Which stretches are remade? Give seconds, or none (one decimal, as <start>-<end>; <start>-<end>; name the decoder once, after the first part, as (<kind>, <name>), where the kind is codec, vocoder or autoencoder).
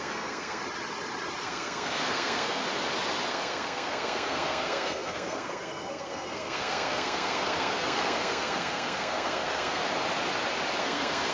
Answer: 0.0-0.6 (codec, SNAC); 1.4-2.6; 3.3-9.8; 10.8-11.3